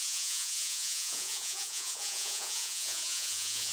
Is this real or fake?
fake